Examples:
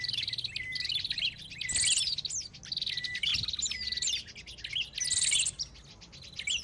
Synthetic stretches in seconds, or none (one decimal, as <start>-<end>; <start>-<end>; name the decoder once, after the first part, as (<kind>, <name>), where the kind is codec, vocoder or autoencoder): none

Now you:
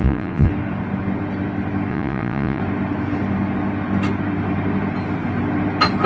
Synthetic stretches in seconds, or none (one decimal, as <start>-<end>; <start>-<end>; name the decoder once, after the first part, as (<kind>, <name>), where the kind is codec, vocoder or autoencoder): 0.0-0.5 (vocoder, Vocos); 1.9-2.6

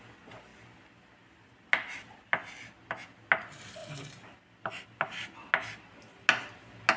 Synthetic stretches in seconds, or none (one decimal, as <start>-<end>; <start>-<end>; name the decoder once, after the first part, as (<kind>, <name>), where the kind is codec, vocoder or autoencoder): none